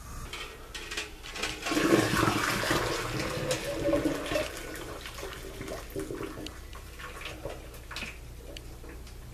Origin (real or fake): real